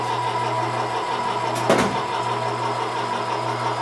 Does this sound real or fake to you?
real